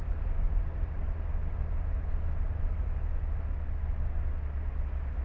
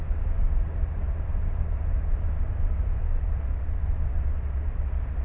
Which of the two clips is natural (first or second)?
first